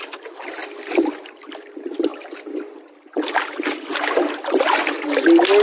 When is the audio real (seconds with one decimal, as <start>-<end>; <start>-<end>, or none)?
0.0-5.6